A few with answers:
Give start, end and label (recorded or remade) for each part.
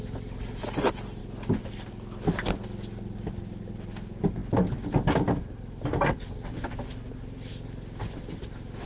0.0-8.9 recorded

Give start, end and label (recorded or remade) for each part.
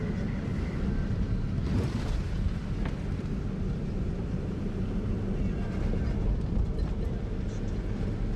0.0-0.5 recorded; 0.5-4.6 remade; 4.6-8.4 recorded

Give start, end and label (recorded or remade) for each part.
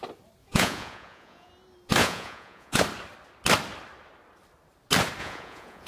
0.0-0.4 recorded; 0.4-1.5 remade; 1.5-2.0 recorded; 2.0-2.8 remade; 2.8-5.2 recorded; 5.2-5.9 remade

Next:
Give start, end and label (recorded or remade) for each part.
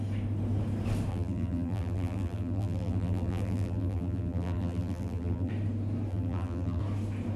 0.0-1.1 recorded; 1.1-5.5 remade; 5.5-6.1 recorded; 6.1-6.8 remade; 6.8-7.4 recorded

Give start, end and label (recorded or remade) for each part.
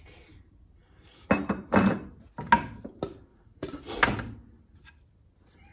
0.0-3.3 recorded; 3.3-3.9 remade; 3.9-5.7 recorded